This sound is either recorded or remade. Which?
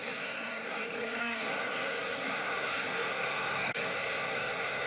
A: remade